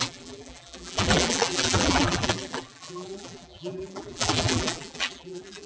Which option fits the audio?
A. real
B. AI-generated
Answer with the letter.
B